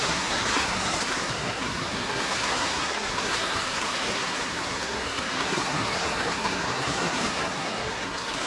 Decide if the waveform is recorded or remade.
remade